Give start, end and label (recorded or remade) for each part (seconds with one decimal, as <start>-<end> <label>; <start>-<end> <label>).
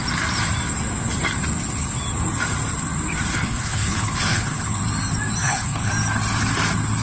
0.0-3.3 recorded; 3.3-4.8 remade; 4.8-5.4 recorded; 5.4-5.9 remade; 5.9-7.0 recorded